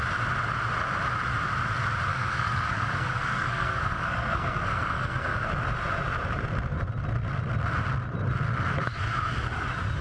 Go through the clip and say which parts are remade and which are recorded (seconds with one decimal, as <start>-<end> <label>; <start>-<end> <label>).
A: 0.0-2.1 recorded; 2.1-5.5 remade; 5.5-10.0 recorded